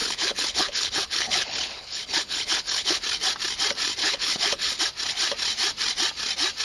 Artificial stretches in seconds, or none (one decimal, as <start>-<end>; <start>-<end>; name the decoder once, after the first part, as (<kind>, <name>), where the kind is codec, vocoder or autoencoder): 0.0-3.0 (codec, HILCodec); 4.0-4.8